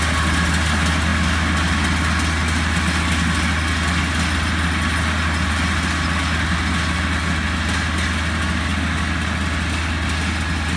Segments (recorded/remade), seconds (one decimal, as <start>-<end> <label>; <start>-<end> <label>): 0.0-10.8 recorded